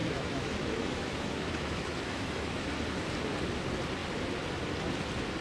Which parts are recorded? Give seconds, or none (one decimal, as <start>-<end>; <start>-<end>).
2.7-5.4